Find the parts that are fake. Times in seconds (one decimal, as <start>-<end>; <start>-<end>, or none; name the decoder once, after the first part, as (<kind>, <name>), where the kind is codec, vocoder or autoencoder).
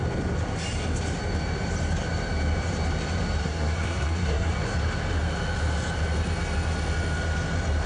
3.4-4.5 (codec, SNAC)